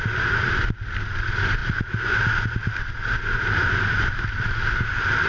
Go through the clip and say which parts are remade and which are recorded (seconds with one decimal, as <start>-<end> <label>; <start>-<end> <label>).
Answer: 0.0-5.3 recorded